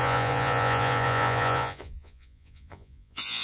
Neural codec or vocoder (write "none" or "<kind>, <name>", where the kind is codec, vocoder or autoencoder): vocoder, Vocos